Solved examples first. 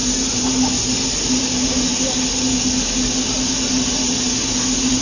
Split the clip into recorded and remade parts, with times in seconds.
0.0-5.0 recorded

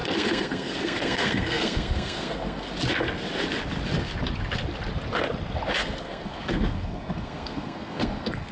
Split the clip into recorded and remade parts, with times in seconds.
0.0-2.7 remade; 2.7-5.8 recorded; 5.8-8.5 remade

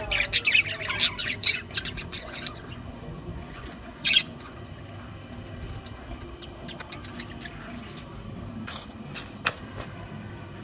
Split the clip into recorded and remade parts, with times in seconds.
0.0-1.2 recorded; 1.2-4.7 remade; 4.7-10.6 recorded